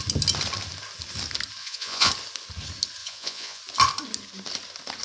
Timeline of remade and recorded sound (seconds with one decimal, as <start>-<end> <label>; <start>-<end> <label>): 0.0-1.6 recorded; 1.6-2.1 remade; 2.1-3.0 recorded; 3.0-3.6 remade; 3.6-5.0 recorded